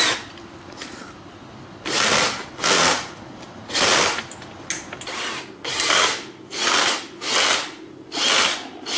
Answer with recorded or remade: recorded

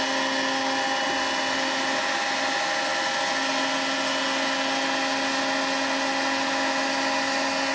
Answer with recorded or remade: recorded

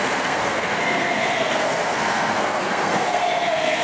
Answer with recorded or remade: remade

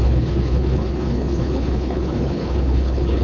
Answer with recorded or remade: remade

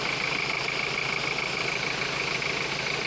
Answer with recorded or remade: recorded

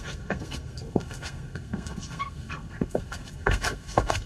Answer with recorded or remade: remade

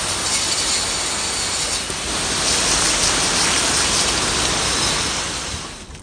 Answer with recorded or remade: recorded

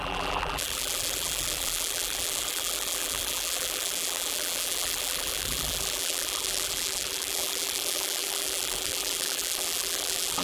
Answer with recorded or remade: remade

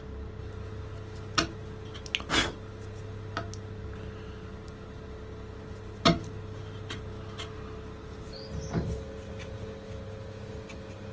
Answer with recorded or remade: recorded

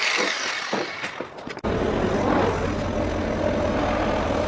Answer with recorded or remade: recorded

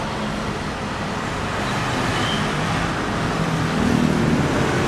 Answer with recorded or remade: recorded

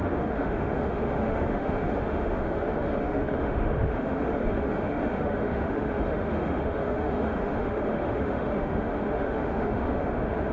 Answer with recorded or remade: remade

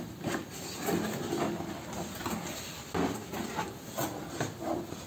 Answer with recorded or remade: recorded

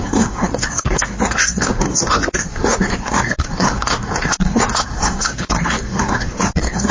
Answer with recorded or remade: remade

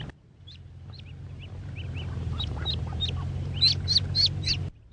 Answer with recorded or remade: recorded